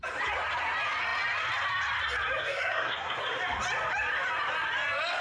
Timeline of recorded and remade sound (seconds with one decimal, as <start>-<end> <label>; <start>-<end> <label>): 0.0-2.4 recorded; 2.4-3.2 remade; 3.2-5.2 recorded